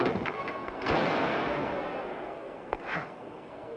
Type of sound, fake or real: fake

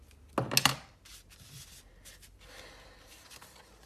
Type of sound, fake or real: real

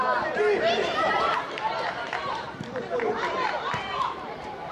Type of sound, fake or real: fake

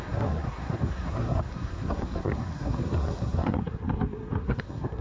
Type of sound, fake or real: fake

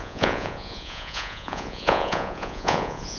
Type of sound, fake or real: fake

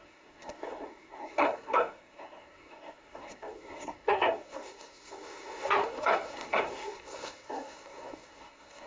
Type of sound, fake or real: fake